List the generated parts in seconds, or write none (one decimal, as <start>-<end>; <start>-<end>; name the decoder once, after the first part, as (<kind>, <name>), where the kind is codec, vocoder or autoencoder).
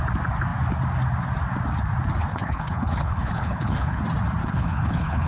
2.3-4.0 (codec, HILCodec); 4.4-5.3